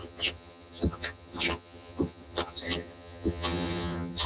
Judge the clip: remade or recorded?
remade